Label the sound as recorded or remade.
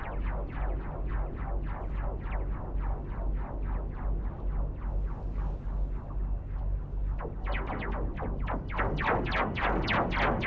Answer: recorded